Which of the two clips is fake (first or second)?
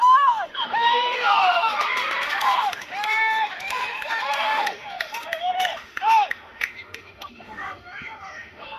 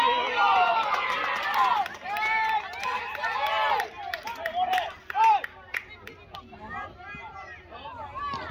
first